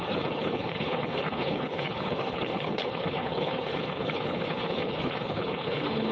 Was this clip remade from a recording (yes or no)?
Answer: yes